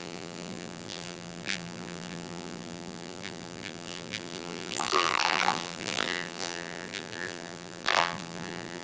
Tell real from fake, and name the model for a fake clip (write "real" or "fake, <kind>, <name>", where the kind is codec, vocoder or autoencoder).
fake, vocoder, BigVGAN v2